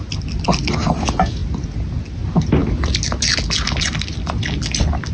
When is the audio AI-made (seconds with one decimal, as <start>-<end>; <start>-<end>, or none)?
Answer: none